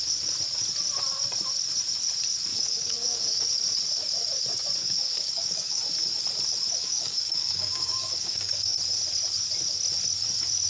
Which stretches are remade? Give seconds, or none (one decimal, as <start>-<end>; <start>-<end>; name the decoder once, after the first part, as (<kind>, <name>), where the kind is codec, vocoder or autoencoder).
2.5-3.5 (codec, DAC); 4.8-5.8; 6.8-8.8